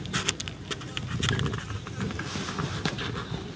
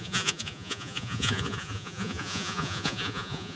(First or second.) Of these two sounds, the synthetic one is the second